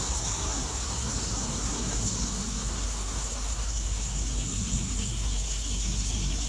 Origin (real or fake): fake